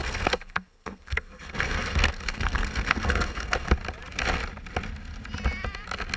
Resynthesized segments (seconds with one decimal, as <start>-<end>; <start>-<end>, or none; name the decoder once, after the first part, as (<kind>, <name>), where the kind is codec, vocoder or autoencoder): 0.0-3.7 (codec, SNAC)